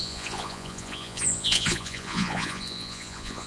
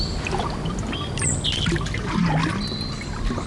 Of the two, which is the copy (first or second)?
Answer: first